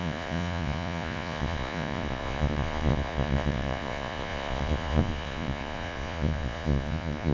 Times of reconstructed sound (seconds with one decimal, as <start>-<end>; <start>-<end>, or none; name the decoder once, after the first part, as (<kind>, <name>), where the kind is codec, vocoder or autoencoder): 0.0-7.3 (vocoder, Vocos)